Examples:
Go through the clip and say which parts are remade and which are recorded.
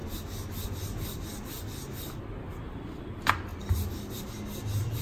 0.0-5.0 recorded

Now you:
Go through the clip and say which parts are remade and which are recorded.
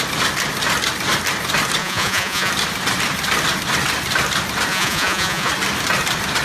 0.0-1.8 recorded; 1.8-2.5 remade; 2.5-4.7 recorded; 4.7-5.5 remade; 5.5-6.4 recorded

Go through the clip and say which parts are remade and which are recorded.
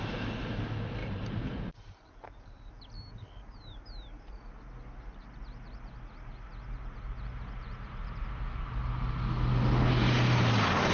0.0-1.0 recorded; 1.0-2.7 remade; 2.7-10.9 recorded